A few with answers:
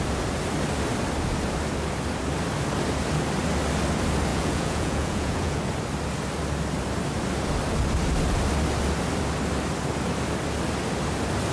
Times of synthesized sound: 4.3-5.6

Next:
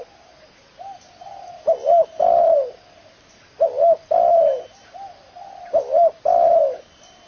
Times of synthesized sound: none